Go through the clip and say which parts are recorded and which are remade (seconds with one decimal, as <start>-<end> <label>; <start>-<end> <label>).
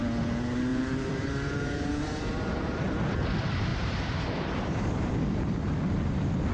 0.0-0.7 recorded; 0.7-2.8 remade; 2.8-3.7 recorded; 3.7-5.1 remade; 5.1-6.5 recorded